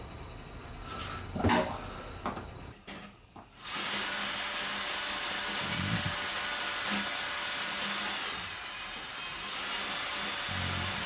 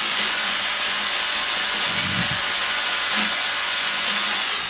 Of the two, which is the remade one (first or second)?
second